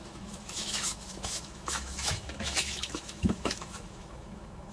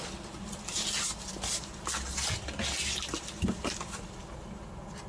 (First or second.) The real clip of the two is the second